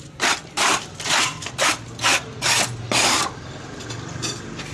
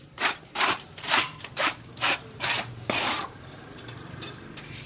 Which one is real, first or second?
first